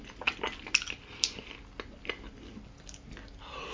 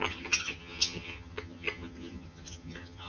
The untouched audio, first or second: first